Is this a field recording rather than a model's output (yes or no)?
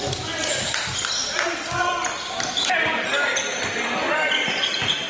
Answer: yes